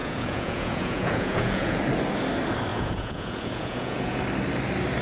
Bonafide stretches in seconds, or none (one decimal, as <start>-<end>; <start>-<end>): 1.8-2.7; 4.2-5.0